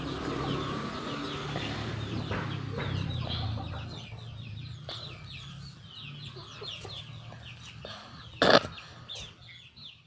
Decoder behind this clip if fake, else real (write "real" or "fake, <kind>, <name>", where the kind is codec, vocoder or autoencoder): real